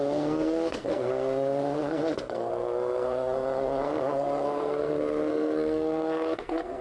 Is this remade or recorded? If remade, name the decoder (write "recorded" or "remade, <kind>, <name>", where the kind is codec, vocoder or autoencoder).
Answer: remade, codec, SNAC